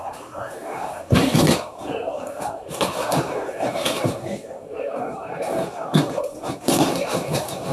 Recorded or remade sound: remade